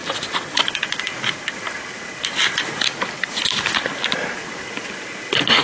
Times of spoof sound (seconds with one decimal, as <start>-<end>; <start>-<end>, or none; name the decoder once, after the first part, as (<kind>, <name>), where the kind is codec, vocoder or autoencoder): none